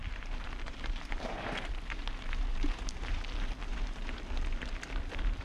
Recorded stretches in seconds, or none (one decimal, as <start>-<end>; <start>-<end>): 3.2-3.6; 4.2-5.4